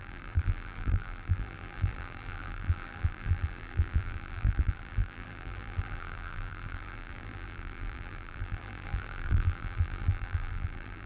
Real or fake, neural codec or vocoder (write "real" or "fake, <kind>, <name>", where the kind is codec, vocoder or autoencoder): fake, vocoder, BigVGAN v2